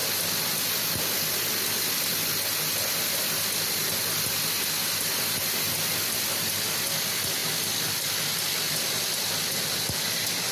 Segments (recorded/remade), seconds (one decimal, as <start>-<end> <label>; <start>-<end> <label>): 0.0-2.1 recorded; 2.1-2.7 remade; 2.7-7.4 recorded; 7.4-10.5 remade

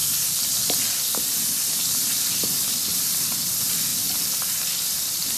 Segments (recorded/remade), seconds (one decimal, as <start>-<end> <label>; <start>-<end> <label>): 0.0-3.2 recorded; 3.2-3.9 remade; 3.9-5.0 recorded; 5.0-5.4 remade

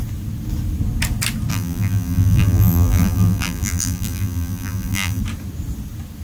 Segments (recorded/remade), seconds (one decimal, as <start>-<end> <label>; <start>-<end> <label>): 0.0-1.5 recorded; 1.5-5.2 remade; 5.2-6.2 recorded